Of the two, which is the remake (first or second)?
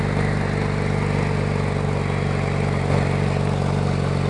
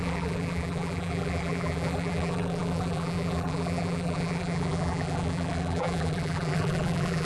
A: second